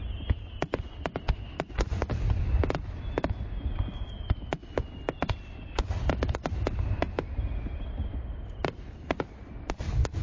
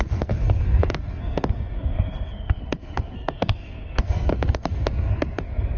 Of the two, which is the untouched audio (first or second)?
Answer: first